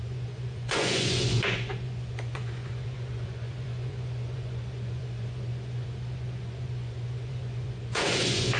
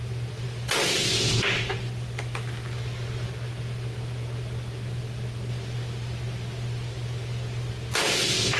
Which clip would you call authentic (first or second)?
second